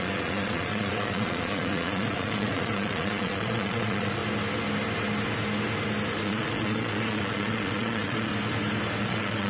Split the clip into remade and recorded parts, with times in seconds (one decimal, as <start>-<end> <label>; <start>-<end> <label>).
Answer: 0.0-4.2 remade; 4.2-6.2 recorded; 6.2-8.3 remade; 8.3-9.0 recorded; 9.0-9.5 remade